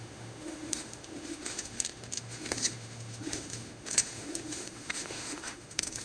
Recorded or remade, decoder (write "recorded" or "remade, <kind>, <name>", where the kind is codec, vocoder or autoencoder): remade, autoencoder, DAC-VAE